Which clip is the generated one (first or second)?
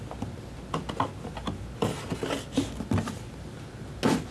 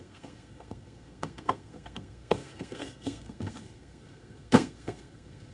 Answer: second